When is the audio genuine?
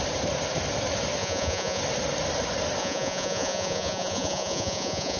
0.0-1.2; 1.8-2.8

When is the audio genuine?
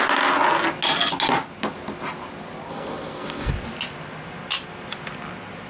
0.0-2.7; 3.5-5.7